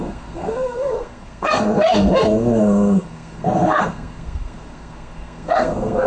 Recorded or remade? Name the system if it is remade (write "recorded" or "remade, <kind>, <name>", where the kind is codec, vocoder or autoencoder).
remade, codec, SNAC